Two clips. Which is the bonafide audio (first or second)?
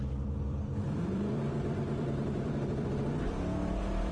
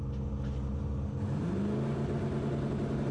second